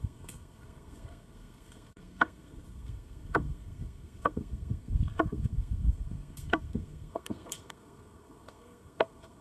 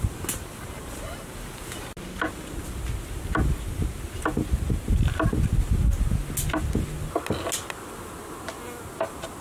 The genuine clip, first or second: second